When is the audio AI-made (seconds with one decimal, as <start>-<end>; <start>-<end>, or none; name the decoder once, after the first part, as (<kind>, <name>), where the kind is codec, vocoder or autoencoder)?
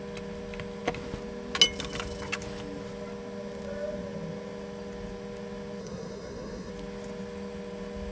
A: 5.8-6.7 (codec, SNAC)